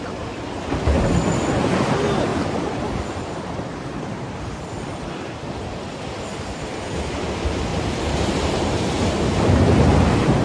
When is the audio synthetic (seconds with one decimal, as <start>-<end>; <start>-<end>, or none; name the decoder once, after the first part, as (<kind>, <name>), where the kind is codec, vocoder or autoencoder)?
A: 2.3-5.0 (vocoder, BigVGAN v2); 7.7-9.0